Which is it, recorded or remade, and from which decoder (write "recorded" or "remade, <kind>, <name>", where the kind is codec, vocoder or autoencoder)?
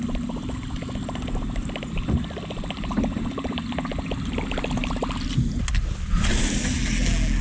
recorded